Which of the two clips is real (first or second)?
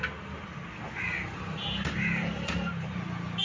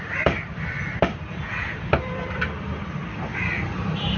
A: first